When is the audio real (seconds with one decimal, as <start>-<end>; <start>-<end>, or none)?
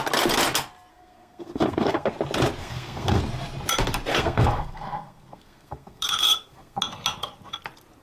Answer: 0.0-0.9; 2.1-2.6; 3.2-4.1; 6.8-8.0